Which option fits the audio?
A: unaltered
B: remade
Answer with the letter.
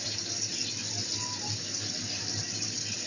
A